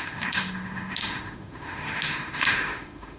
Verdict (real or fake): fake